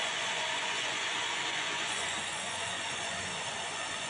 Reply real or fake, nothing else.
fake